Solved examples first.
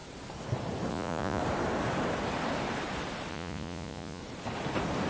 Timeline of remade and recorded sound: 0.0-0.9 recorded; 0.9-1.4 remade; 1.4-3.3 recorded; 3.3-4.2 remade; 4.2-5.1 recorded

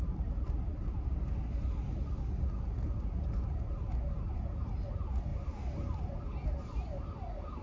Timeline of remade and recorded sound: 0.0-7.6 recorded

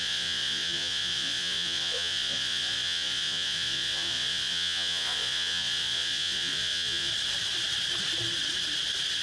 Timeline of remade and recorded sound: 0.0-7.1 remade; 7.1-9.2 recorded